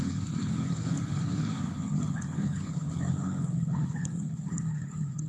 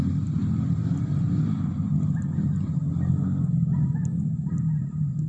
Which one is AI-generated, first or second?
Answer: first